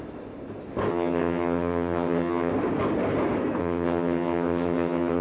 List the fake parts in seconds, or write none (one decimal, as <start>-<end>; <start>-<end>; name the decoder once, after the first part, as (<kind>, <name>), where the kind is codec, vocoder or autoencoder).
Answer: 0.9-2.5 (vocoder, HiFi-GAN); 3.6-5.2